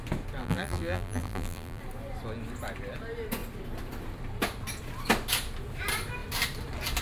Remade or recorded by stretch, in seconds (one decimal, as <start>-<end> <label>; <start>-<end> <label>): 0.0-0.4 recorded; 0.4-1.8 remade; 1.8-7.0 recorded